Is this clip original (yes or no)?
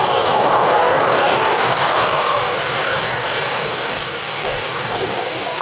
no